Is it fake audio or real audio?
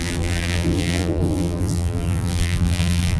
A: fake